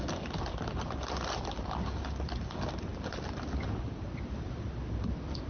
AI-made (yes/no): no